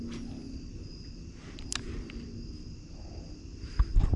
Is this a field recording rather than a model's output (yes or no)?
yes